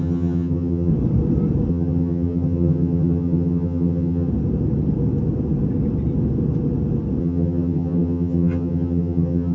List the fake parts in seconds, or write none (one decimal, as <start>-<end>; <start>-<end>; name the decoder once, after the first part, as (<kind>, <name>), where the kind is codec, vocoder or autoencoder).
0.0-0.9 (vocoder, HiFi-GAN); 1.7-4.3; 7.2-9.5